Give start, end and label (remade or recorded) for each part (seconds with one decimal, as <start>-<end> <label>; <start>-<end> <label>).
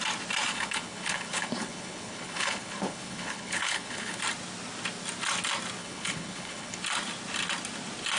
0.0-0.5 recorded; 0.5-4.2 remade; 4.2-5.8 recorded; 5.8-6.8 remade; 6.8-8.2 recorded